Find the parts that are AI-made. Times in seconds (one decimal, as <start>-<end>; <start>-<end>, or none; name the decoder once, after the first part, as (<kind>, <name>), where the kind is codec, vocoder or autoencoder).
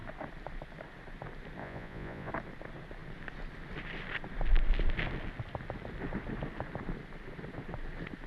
1.6-2.3 (vocoder, Vocos)